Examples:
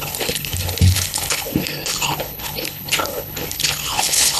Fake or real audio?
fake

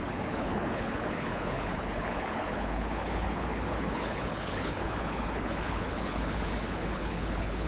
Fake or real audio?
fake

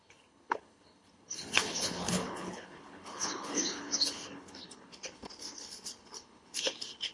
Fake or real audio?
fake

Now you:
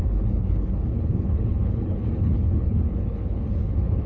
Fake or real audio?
fake